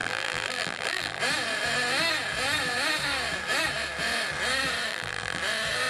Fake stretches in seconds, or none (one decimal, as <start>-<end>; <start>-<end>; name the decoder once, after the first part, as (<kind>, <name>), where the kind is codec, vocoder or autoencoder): 0.0-1.2 (vocoder, BigVGAN v2); 4.9-5.4